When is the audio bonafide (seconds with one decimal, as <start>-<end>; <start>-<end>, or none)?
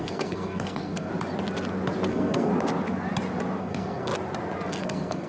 1.1-2.1; 2.5-3.6; 4.1-4.7